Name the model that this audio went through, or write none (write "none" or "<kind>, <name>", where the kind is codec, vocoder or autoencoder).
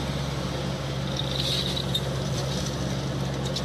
none